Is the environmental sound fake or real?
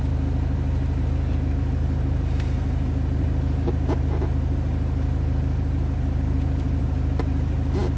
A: real